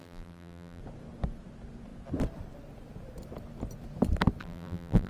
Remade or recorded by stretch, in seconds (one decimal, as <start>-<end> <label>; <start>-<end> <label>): 0.0-0.8 remade; 0.8-4.4 recorded; 4.4-5.1 remade